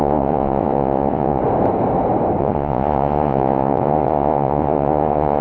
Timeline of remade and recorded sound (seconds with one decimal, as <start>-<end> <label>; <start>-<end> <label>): 0.0-1.4 remade; 1.4-2.4 recorded; 2.4-5.4 remade